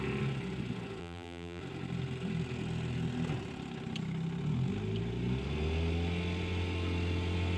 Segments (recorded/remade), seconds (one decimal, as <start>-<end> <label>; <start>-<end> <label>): 0.0-1.0 recorded; 1.0-1.6 remade; 1.6-7.6 recorded